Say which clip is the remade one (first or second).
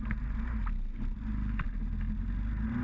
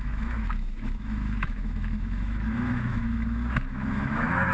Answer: second